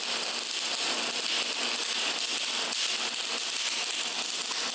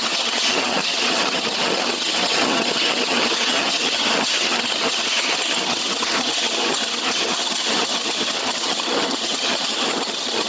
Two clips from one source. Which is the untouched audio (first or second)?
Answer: first